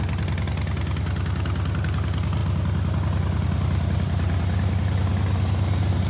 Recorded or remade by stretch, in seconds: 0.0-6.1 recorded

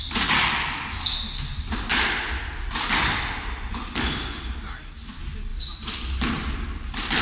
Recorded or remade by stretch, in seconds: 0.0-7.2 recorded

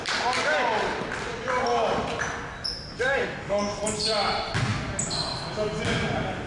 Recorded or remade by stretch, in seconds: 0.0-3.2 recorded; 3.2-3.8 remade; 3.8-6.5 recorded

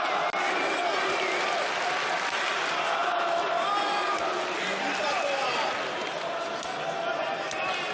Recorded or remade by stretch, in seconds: 0.0-7.9 recorded

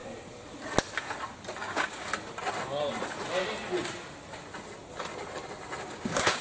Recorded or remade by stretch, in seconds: 0.0-1.6 recorded; 1.6-2.1 remade; 2.1-5.9 recorded; 5.9-6.4 remade

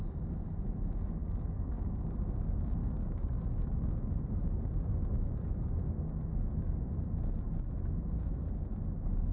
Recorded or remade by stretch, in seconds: 0.0-1.2 recorded; 1.2-2.1 remade; 2.1-2.8 recorded; 2.8-3.9 remade; 3.9-9.3 recorded